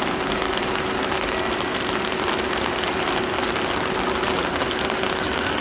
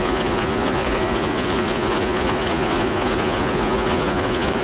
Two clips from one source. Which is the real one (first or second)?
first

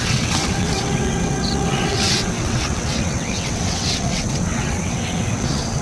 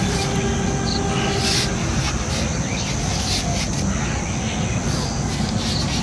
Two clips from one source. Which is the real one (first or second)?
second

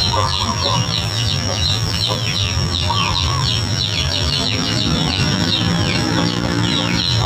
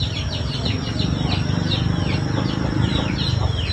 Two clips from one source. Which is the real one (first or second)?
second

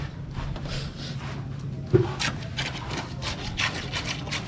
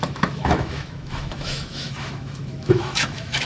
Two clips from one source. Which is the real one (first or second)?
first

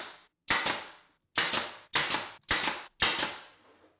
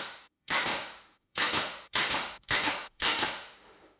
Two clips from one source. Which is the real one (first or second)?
first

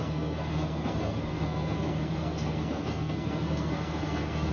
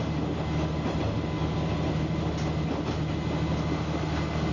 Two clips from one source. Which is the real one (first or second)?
second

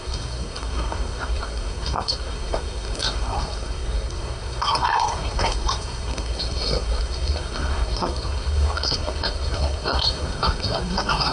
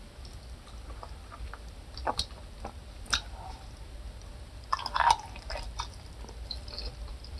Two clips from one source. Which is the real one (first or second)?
second